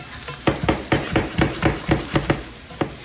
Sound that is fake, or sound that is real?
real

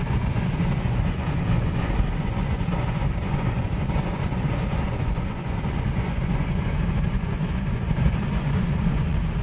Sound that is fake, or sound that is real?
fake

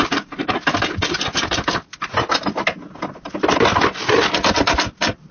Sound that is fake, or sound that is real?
real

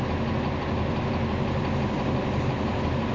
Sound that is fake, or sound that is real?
real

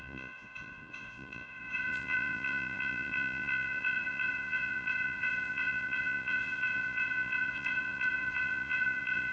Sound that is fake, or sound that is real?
fake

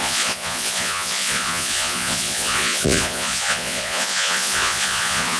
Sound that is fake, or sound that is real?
fake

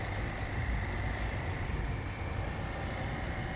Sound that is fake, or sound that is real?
real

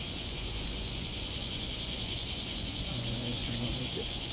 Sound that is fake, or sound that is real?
fake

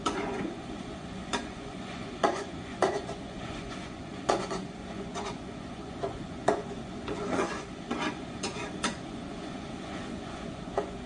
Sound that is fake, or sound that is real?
fake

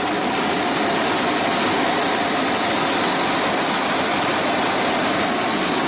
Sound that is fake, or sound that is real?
real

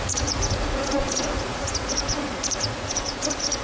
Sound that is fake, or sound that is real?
fake